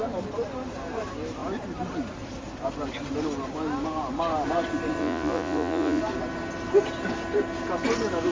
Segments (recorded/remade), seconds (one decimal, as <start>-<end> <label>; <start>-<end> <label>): 0.0-5.0 recorded; 5.0-6.0 remade; 6.0-8.3 recorded